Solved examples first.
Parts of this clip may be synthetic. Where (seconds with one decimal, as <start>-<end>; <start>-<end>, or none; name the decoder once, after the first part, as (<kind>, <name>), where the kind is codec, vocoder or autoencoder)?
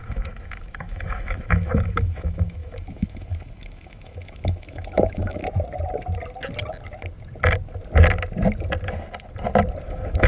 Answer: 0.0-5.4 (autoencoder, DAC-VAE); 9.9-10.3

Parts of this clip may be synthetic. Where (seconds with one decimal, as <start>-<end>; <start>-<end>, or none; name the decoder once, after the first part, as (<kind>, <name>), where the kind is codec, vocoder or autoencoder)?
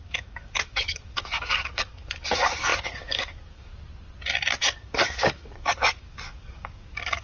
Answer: 0.0-3.7 (codec, DAC); 4.7-7.2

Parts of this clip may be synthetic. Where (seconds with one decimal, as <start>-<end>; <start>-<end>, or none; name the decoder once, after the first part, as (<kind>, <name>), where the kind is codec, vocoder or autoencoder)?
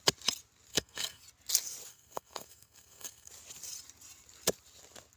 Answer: 0.7-1.2 (codec, SNAC); 1.9-3.3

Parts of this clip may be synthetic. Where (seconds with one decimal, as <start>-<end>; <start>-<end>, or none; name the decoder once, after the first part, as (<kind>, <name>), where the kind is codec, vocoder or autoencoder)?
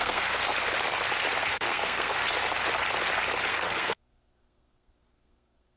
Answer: 0.0-0.4 (codec, SNAC); 1.4-2.2; 3.5-5.8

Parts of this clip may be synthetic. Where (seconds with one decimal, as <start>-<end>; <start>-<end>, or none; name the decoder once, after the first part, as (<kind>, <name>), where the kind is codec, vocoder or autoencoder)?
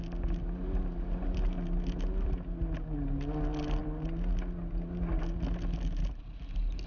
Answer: none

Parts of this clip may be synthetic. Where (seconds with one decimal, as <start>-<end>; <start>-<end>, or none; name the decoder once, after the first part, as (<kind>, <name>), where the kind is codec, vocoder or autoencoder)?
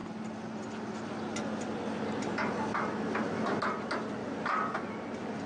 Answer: none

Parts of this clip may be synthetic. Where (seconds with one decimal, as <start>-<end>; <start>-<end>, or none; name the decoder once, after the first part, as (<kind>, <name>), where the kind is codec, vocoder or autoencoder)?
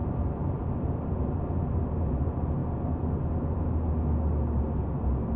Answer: 2.6-3.6 (vocoder, BigVGAN v2)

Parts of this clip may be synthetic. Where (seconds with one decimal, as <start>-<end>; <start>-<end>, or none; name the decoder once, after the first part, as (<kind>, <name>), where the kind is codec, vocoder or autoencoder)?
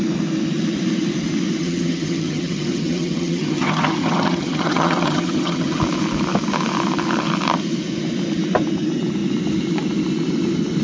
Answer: 1.6-5.8 (vocoder, HiFi-GAN)